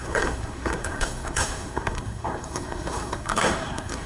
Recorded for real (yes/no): no